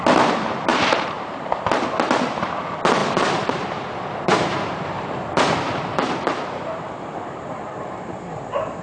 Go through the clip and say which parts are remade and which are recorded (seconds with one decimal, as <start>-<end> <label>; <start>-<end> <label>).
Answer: 0.0-0.7 recorded; 0.7-1.5 remade; 1.5-3.0 recorded; 3.0-8.2 remade; 8.2-8.8 recorded